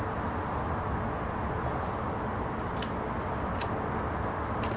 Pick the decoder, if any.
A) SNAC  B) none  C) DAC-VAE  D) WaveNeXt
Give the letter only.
B